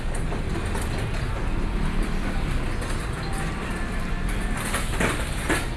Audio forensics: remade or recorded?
recorded